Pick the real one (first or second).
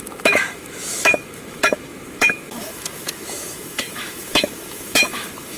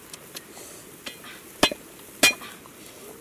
second